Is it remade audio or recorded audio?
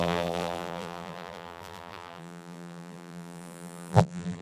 remade